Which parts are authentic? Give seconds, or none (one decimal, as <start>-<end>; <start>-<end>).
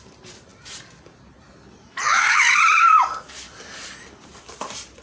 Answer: none